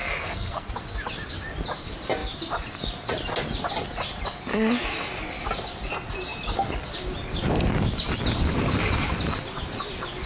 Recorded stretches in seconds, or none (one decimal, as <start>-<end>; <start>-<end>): 0.7-10.3